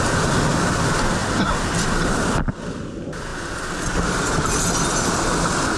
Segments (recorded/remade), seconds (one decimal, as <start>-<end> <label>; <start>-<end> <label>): 0.0-5.8 recorded

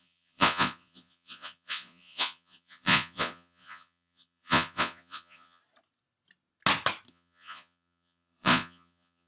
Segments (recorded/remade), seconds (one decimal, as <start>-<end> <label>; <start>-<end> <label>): 0.0-5.6 remade; 5.6-7.1 recorded; 7.1-9.3 remade